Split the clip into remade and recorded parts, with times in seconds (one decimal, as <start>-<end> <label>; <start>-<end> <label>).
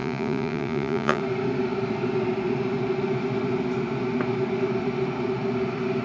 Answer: 0.0-1.2 remade; 1.2-6.0 recorded